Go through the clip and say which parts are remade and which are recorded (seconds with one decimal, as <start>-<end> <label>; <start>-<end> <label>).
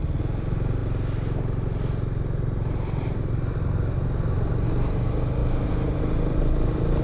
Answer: 0.0-7.0 recorded